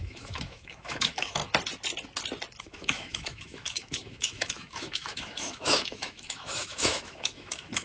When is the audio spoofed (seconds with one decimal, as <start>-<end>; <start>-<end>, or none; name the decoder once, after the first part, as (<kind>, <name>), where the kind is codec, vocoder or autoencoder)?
0.0-1.4 (autoencoder, DAC-VAE); 2.6-7.8